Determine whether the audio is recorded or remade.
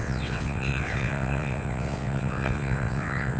remade